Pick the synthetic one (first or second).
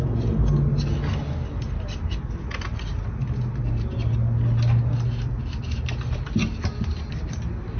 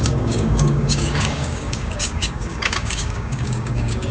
second